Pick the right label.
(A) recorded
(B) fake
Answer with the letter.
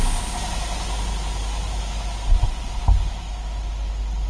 A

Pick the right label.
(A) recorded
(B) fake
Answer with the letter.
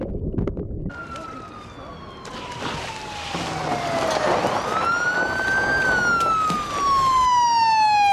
A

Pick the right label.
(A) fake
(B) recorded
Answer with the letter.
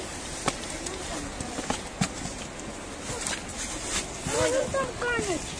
B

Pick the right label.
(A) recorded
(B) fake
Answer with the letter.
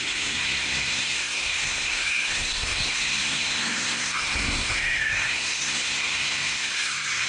B